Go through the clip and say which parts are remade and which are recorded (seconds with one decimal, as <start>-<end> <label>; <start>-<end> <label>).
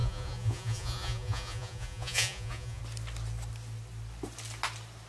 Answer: 0.0-2.8 remade; 2.8-5.1 recorded